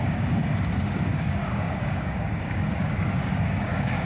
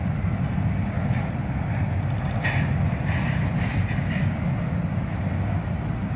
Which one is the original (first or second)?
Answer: second